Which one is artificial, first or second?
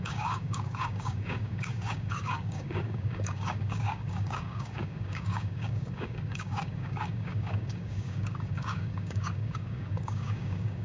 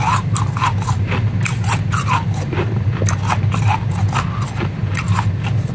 first